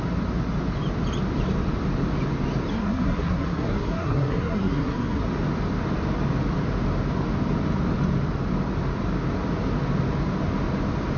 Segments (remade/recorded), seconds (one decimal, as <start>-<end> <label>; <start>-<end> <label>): 0.0-2.7 recorded; 2.7-5.2 remade; 5.2-11.2 recorded

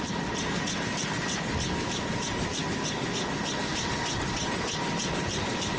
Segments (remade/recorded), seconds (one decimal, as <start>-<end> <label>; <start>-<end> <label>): 0.0-5.8 recorded

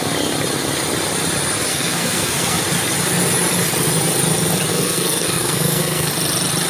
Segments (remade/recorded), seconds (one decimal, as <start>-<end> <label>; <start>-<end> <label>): 0.0-1.7 recorded; 1.7-2.6 remade; 2.6-4.7 recorded; 4.7-6.1 remade; 6.1-6.7 recorded